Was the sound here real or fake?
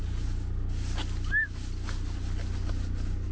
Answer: real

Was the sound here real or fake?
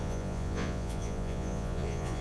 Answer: fake